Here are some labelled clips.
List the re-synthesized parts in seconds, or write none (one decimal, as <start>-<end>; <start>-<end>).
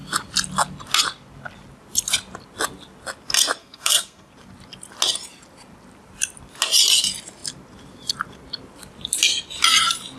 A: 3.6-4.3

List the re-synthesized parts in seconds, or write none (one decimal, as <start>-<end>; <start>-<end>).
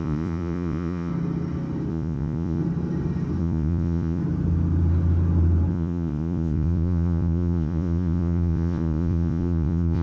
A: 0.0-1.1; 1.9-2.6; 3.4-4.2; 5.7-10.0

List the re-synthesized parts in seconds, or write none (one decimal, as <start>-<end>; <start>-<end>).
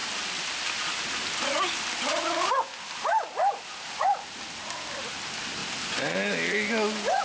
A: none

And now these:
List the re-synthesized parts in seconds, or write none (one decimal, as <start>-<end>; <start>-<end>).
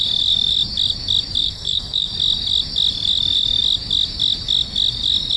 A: 1.4-2.1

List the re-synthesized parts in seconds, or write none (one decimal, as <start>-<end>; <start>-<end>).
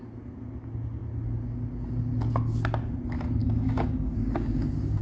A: 3.4-5.0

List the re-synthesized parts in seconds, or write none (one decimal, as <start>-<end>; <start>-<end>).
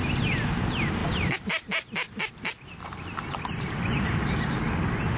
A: 1.0-2.9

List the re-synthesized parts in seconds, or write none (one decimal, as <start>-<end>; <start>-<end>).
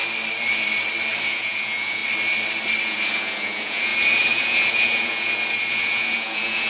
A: 1.2-2.0; 2.8-6.7